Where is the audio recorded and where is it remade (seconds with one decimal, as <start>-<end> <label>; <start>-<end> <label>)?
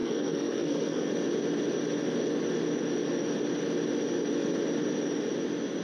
0.0-1.1 remade; 1.1-5.8 recorded